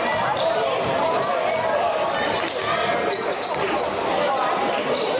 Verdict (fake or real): real